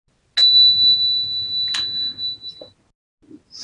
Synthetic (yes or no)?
no